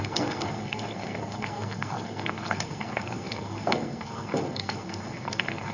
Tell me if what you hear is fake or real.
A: fake